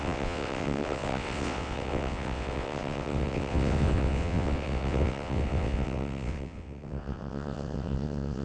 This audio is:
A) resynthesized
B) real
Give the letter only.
A